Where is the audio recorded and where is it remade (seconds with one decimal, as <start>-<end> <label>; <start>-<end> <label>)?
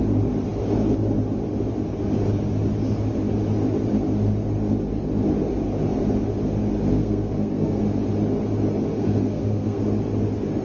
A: 0.0-6.9 recorded; 6.9-7.8 remade; 7.8-9.0 recorded; 9.0-9.8 remade; 9.8-10.6 recorded